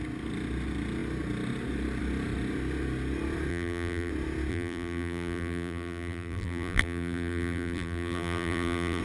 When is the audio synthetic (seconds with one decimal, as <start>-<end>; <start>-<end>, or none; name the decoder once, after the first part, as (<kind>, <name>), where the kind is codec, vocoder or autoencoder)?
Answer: 3.5-4.1 (vocoder, BigVGAN v2); 4.5-9.0